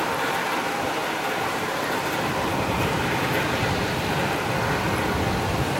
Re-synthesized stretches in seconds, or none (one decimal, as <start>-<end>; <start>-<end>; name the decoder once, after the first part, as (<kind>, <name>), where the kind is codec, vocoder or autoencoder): 1.0-4.5 (vocoder, BigVGAN v2)